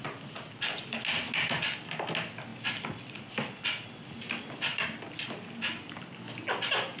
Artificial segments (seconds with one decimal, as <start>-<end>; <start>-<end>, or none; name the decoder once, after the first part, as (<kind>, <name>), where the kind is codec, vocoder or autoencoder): none